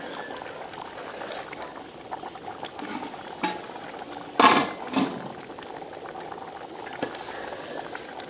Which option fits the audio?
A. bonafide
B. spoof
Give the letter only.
A